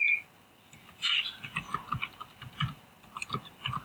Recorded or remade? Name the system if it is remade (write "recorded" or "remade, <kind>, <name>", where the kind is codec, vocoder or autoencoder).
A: recorded